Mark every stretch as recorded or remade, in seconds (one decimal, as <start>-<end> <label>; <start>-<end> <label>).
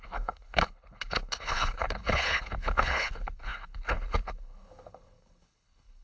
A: 0.0-6.0 remade